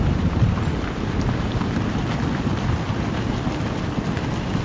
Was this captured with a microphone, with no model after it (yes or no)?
yes